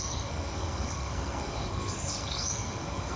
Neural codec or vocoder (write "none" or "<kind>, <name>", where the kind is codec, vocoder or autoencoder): codec, SNAC